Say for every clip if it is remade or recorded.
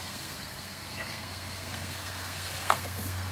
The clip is remade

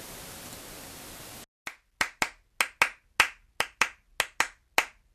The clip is recorded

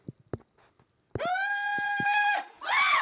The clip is recorded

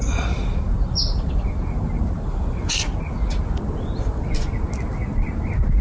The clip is recorded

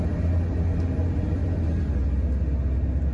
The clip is recorded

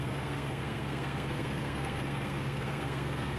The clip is remade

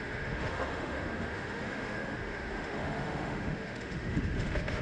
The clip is remade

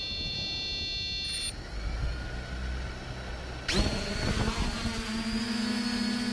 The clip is recorded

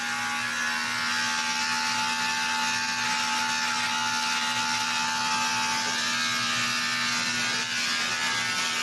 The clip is recorded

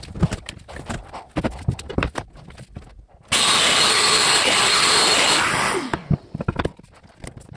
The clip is recorded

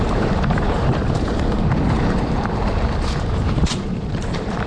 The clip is remade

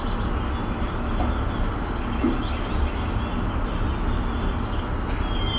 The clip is recorded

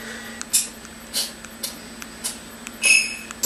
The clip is recorded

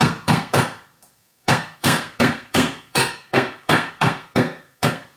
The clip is remade